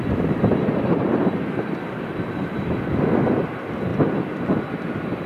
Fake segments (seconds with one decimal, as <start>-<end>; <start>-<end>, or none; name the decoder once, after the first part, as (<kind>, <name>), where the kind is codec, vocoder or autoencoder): 0.5-2.7 (vocoder, BigVGAN v2)

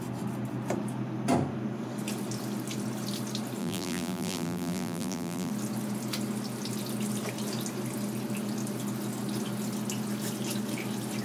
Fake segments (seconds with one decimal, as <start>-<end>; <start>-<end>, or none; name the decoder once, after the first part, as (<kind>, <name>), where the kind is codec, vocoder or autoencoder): 3.6-5.5 (vocoder, BigVGAN v2)

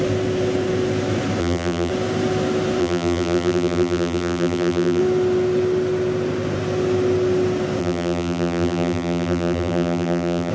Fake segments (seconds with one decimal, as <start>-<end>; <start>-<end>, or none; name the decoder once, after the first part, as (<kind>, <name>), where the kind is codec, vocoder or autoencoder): 1.4-1.9 (vocoder, BigVGAN v2); 2.8-5.0; 7.8-10.5

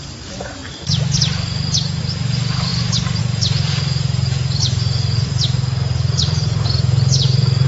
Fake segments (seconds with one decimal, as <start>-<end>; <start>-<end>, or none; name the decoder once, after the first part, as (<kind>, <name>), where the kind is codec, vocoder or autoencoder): 0.0-0.6 (vocoder, BigVGAN v2); 2.0-7.7

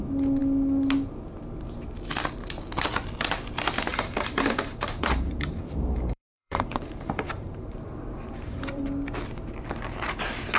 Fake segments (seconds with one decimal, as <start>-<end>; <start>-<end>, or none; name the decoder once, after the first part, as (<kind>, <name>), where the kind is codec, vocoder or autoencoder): 3.9-8.8 (vocoder, BigVGAN v2)

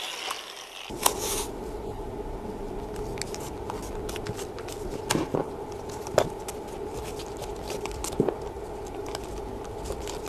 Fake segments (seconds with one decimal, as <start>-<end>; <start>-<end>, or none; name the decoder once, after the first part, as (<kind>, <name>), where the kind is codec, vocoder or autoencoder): none

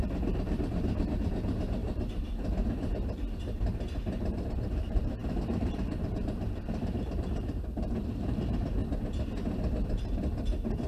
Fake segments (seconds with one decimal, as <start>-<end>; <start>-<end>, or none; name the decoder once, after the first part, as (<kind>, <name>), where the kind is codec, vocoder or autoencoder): 0.0-8.8 (vocoder, BigVGAN v2)

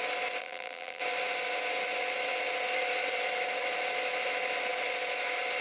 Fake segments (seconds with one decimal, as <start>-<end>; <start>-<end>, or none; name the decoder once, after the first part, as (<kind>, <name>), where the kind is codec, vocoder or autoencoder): 0.4-1.0 (vocoder, BigVGAN v2)